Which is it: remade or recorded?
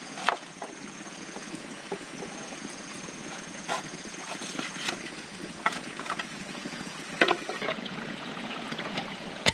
remade